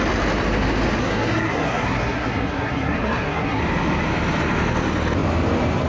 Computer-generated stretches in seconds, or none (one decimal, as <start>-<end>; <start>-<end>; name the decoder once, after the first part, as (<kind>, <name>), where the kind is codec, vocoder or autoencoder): 1.0-3.6 (codec, SNAC)